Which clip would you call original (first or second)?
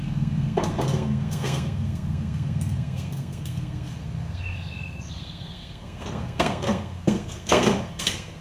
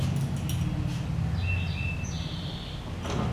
second